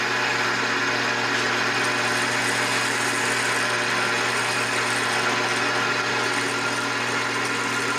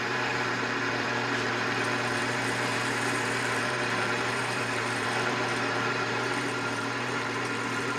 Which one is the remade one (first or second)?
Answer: second